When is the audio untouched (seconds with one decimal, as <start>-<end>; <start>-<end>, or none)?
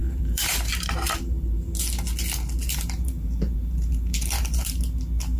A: 1.7-2.6; 4.8-5.4